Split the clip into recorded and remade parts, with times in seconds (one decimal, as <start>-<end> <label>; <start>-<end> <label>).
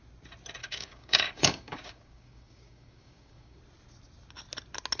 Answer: 0.0-0.6 recorded; 0.6-3.6 remade; 3.6-5.0 recorded